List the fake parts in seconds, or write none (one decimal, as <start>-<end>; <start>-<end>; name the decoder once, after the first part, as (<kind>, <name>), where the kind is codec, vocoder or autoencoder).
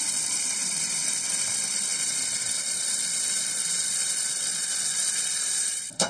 0.0-1.0 (vocoder, BigVGAN v2); 1.5-6.1